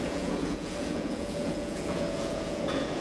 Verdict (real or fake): fake